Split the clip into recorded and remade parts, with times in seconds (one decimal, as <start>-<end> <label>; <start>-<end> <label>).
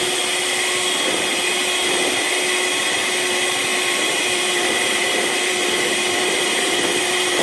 0.0-3.7 recorded; 3.7-7.4 remade